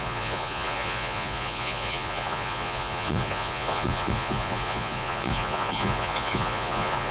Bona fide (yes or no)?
no